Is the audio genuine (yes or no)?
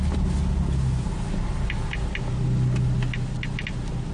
yes